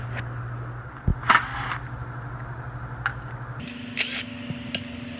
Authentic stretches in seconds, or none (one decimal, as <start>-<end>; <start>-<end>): 0.0-5.2